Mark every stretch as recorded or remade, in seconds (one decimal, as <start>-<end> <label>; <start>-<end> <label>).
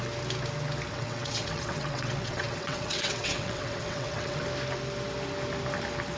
0.0-0.9 recorded; 0.9-4.4 remade; 4.4-6.2 recorded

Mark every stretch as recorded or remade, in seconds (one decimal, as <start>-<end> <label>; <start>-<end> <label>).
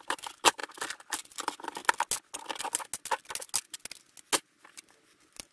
0.0-0.6 remade; 0.6-1.3 recorded; 1.3-1.8 remade; 1.8-4.4 recorded; 4.4-5.5 remade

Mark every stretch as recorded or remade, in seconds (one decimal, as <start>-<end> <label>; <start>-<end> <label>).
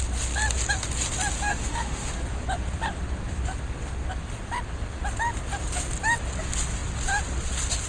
0.0-1.5 recorded; 1.5-2.1 remade; 2.1-7.9 recorded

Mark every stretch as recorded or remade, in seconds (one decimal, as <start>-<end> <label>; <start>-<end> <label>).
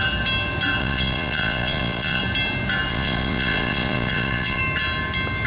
0.0-0.8 recorded; 0.8-2.2 remade; 2.2-2.9 recorded; 2.9-4.6 remade; 4.6-5.5 recorded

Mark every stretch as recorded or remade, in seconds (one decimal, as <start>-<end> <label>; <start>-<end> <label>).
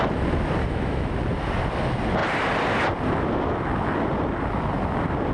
0.0-0.6 recorded; 0.6-1.1 remade; 1.1-5.3 recorded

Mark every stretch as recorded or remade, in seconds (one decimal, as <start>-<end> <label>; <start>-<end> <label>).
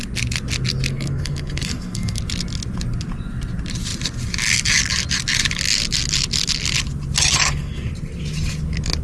0.0-0.9 recorded; 0.9-2.2 remade; 2.2-7.4 recorded; 7.4-7.9 remade; 7.9-9.0 recorded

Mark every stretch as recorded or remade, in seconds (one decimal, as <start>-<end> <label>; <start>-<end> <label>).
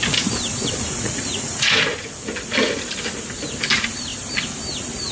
0.0-0.5 recorded; 0.5-2.1 remade; 2.1-5.1 recorded